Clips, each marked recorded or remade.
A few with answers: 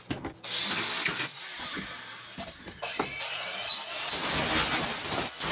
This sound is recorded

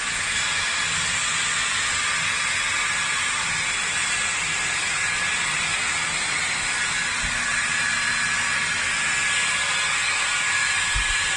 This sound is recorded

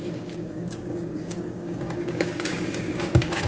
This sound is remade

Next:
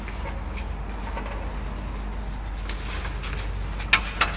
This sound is recorded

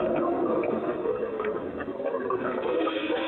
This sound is remade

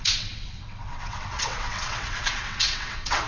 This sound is remade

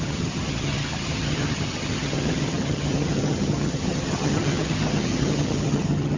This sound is remade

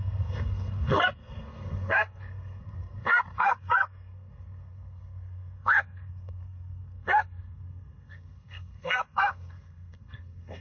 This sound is remade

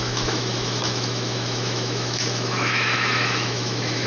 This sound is remade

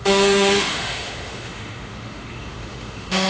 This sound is remade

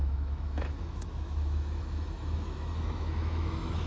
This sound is remade